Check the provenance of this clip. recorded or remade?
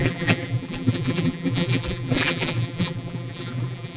remade